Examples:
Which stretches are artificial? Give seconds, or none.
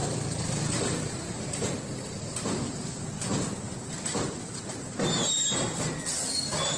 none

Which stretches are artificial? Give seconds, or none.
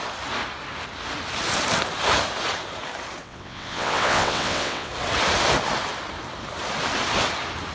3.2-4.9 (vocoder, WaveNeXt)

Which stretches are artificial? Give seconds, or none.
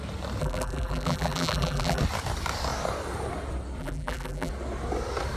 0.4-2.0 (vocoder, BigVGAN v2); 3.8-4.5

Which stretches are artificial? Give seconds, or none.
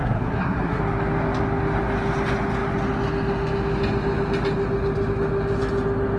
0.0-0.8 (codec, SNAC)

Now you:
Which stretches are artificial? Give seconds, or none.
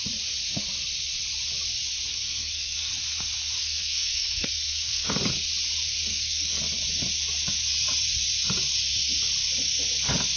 2.1-2.9 (codec, SNAC); 3.6-5.1; 6.1-6.6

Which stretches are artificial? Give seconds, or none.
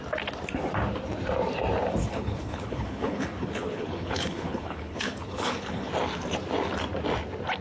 2.0-5.9 (codec, HILCodec)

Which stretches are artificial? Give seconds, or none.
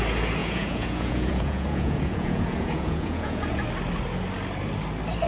0.4-3.6 (vocoder, Vocos)